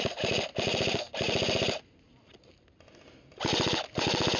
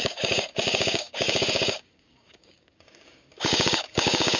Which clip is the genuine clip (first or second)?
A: first